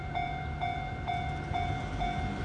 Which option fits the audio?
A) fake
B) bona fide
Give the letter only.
B